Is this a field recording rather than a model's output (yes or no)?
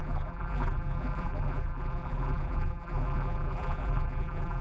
no